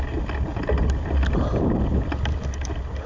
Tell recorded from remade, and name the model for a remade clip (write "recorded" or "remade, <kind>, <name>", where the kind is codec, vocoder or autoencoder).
recorded